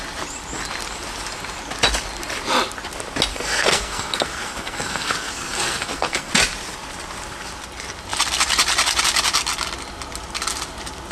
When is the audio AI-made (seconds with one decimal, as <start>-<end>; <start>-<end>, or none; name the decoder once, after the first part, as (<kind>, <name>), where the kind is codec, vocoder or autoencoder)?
3.3-6.3 (codec, SNAC)